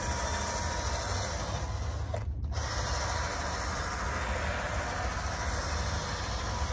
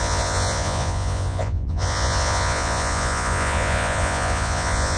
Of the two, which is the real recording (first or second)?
first